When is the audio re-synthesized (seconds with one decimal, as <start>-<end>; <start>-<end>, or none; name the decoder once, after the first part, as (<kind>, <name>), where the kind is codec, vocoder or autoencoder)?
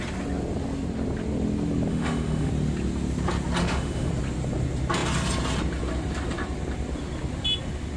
1.9-2.5 (autoencoder, DAC-VAE); 3.6-4.1